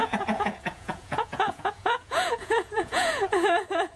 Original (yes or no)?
no